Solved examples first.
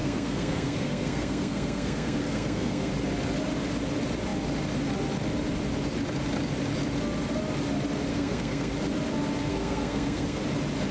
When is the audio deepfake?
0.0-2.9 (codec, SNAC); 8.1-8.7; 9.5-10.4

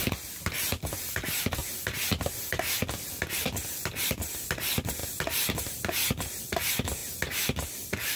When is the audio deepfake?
0.0-1.6 (vocoder, BigVGAN v2); 4.0-7.0

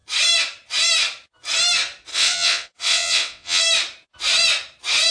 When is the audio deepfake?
2.1-3.6 (vocoder, WaveNeXt)